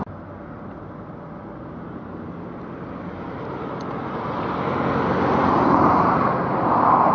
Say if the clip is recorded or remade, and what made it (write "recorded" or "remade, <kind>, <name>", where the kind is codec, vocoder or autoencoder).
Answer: recorded